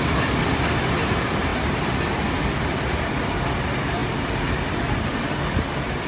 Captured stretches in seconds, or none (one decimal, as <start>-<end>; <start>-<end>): 0.0-6.1